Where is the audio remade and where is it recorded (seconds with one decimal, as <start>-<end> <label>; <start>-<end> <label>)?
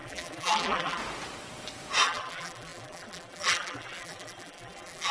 0.0-1.0 remade; 1.0-2.0 recorded; 2.0-5.1 remade